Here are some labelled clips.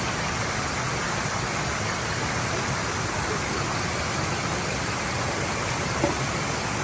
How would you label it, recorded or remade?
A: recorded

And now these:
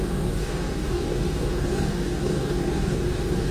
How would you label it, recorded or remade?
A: remade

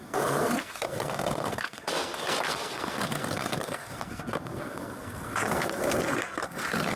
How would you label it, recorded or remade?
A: remade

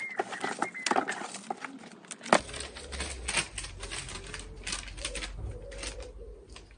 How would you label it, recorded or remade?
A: recorded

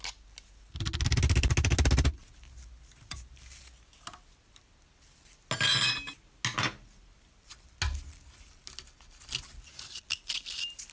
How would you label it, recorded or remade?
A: recorded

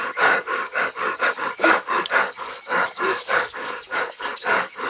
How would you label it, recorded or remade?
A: remade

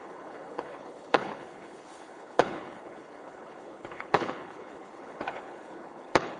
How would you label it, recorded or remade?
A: remade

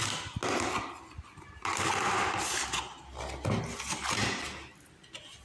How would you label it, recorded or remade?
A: recorded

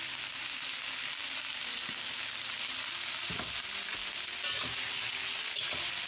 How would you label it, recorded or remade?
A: recorded